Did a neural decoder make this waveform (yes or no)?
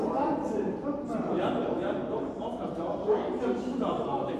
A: yes